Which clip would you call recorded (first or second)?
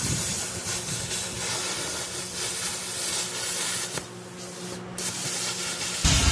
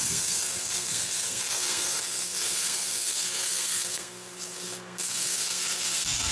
first